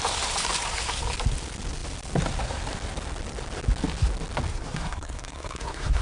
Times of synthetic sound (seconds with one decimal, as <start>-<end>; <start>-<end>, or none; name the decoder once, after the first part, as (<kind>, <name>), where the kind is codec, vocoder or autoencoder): 4.5-6.0 (codec, SNAC)